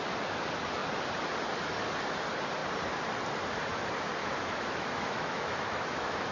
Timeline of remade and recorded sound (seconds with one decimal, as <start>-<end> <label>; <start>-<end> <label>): 0.0-4.2 recorded; 4.2-6.3 remade